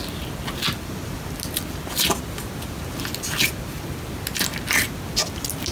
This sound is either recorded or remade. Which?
recorded